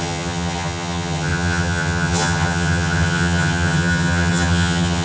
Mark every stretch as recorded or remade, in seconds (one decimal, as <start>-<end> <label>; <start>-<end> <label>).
0.0-5.0 remade